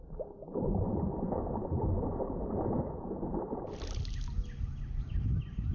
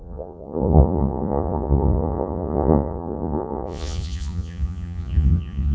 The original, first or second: first